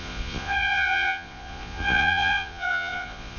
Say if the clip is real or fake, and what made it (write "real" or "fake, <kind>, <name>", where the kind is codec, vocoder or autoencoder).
fake, vocoder, Vocos